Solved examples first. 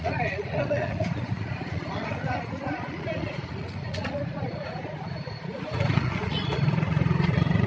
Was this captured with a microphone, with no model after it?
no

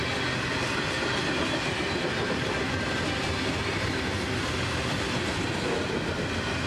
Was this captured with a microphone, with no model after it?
yes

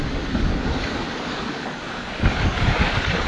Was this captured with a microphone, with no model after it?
no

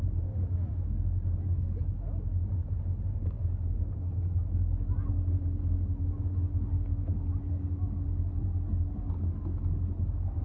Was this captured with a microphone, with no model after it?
yes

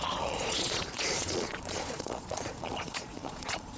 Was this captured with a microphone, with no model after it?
no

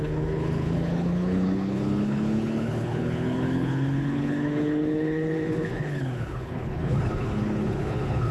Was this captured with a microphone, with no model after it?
no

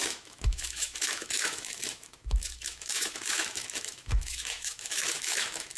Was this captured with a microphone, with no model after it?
no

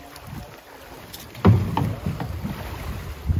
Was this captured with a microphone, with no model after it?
yes